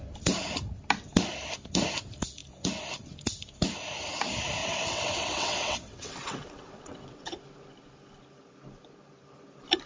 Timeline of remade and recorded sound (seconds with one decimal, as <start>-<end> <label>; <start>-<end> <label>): 0.0-4.6 recorded; 4.6-7.4 remade; 7.4-9.9 recorded